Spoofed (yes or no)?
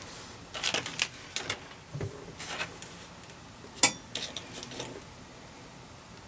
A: no